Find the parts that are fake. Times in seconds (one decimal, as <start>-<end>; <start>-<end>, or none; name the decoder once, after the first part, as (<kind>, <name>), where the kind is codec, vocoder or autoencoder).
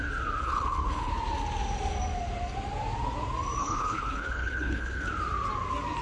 0.4-1.1 (codec, HILCodec); 3.6-5.1